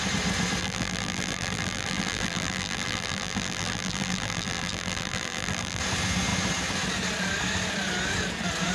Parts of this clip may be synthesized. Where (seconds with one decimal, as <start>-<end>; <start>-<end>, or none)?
0.6-5.8